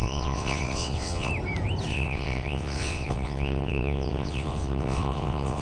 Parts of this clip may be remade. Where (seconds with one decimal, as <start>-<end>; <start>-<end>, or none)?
0.0-1.3; 1.9-5.6